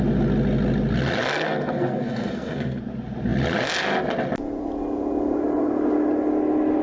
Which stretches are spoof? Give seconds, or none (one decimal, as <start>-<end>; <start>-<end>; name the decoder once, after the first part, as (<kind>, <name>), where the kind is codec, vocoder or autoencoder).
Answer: 1.3-2.8 (codec, SNAC)